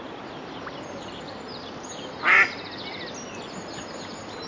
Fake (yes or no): no